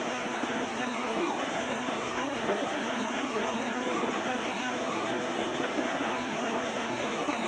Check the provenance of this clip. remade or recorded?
remade